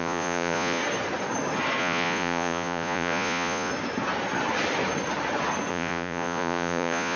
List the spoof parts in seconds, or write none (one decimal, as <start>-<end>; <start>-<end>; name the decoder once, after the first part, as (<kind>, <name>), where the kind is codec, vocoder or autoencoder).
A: 0.0-0.8 (vocoder, Vocos); 1.8-3.7; 5.7-7.2